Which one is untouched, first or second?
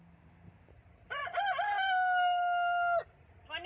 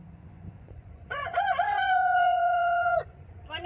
first